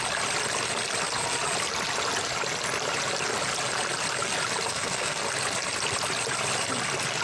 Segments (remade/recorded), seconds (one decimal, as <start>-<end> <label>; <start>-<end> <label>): 0.0-4.7 recorded; 4.7-5.2 remade; 5.2-7.2 recorded